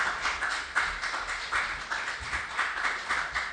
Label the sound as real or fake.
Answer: real